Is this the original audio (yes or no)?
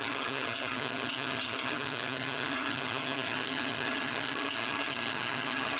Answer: no